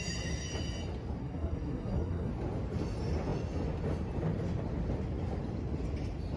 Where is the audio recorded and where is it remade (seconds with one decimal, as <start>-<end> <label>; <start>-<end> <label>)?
0.0-1.2 recorded; 1.2-2.3 remade; 2.3-6.4 recorded